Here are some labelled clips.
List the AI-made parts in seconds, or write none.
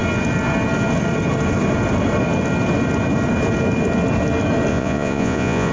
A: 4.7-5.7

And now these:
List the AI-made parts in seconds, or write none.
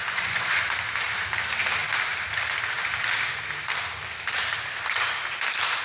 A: 0.0-0.6